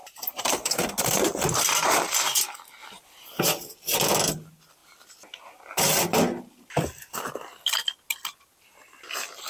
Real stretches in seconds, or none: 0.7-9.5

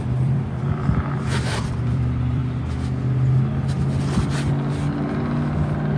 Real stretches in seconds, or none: 2.4-6.0

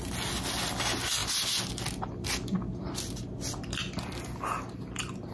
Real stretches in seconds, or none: 0.0-5.3

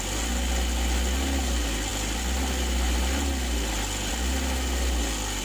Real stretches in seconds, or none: 0.0-5.4

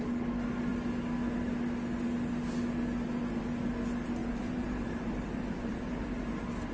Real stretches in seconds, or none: 0.0-4.2

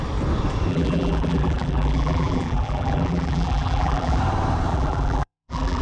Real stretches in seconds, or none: 0.0-0.7; 4.2-4.7

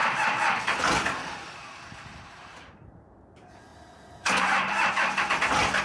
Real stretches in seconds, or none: 3.2-3.7; 4.9-5.8

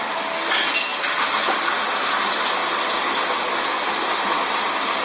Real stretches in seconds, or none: 0.0-5.0